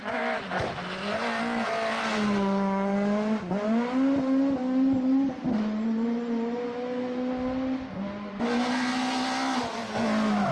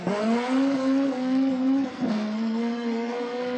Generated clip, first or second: second